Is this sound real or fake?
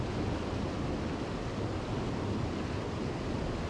real